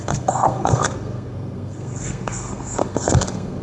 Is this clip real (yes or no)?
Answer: no